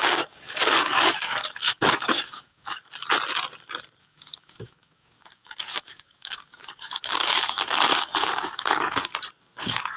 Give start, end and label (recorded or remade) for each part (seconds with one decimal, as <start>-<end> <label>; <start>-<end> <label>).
0.0-2.8 remade; 2.8-4.0 recorded; 4.0-9.1 remade; 9.1-9.6 recorded; 9.6-10.0 remade